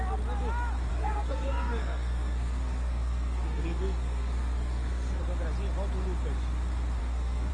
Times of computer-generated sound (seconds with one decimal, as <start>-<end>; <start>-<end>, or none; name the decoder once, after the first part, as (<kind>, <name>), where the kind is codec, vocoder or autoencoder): 0.9-5.2 (codec, SNAC); 7.0-7.5